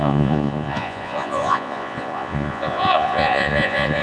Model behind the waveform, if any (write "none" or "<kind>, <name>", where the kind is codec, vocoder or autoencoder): vocoder, Vocos